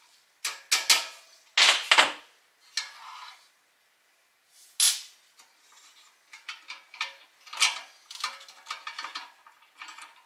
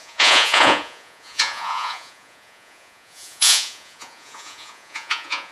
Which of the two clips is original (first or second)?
first